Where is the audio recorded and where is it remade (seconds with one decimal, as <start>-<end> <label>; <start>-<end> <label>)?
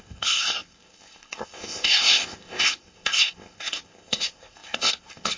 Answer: 0.0-5.4 remade